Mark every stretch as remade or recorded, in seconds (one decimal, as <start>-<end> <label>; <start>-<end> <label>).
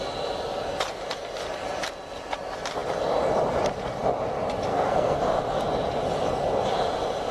0.0-4.7 recorded; 4.7-5.2 remade; 5.2-7.3 recorded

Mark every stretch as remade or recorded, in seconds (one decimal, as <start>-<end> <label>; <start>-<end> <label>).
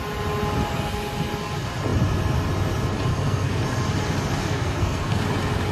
0.0-3.1 recorded; 3.1-3.6 remade; 3.6-4.4 recorded; 4.4-5.2 remade; 5.2-5.7 recorded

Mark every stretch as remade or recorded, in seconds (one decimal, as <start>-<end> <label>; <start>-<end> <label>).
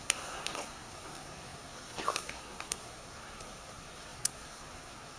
0.0-5.2 remade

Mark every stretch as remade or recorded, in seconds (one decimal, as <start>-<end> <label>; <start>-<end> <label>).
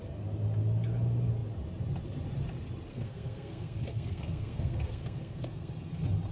0.0-2.9 recorded; 2.9-5.7 remade; 5.7-6.3 recorded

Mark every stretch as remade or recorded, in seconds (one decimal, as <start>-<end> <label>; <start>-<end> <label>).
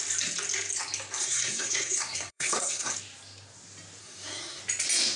0.0-1.2 recorded; 1.2-2.9 remade; 2.9-4.0 recorded; 4.0-4.6 remade; 4.6-5.2 recorded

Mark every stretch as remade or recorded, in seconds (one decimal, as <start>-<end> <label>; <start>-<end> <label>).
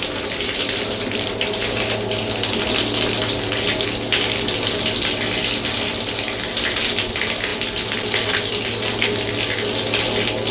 0.0-10.5 recorded